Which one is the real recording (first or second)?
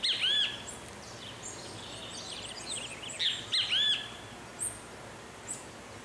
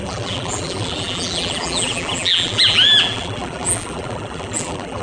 first